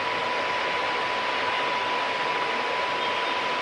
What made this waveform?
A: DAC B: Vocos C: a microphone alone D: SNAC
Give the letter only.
C